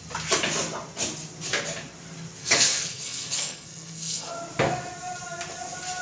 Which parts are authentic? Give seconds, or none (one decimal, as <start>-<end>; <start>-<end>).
0.0-2.4; 4.3-6.0